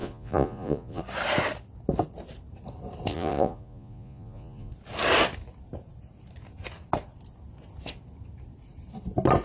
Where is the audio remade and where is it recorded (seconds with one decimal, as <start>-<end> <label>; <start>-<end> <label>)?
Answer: 0.0-1.0 remade; 1.0-3.1 recorded; 3.1-4.7 remade; 4.7-9.4 recorded